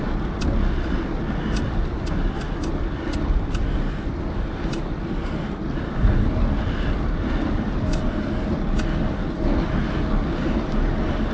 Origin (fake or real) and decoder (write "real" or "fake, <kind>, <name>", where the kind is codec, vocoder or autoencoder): real